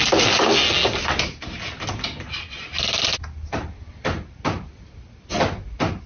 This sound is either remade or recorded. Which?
recorded